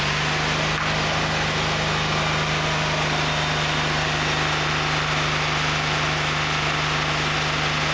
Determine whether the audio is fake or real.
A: real